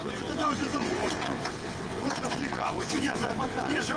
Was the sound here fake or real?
fake